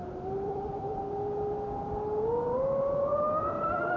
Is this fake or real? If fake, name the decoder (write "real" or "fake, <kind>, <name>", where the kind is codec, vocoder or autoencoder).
real